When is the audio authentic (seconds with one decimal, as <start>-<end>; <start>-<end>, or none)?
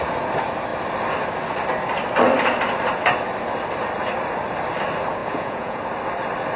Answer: 0.0-5.2; 5.8-6.6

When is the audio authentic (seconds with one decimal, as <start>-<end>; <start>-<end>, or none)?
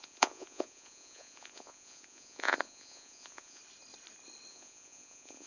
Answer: 3.6-4.5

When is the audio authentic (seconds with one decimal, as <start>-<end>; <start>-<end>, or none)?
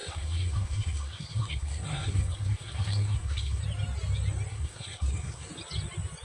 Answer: 3.6-4.5; 5.5-6.2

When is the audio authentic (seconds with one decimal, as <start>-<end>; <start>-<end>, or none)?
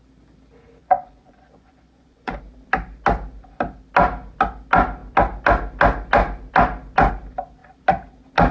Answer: 0.0-0.8; 2.4-8.5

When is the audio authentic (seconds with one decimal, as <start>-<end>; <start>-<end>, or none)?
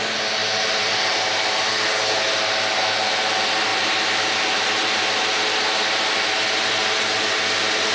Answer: 0.0-0.4; 1.7-7.9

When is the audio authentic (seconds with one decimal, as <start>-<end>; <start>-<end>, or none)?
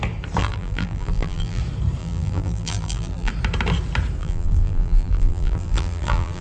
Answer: 0.0-0.4; 1.6-2.0; 3.3-4.2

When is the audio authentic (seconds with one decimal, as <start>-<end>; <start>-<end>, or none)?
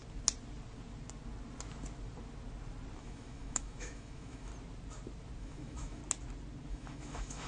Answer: 0.0-3.0; 4.5-5.4; 6.0-6.7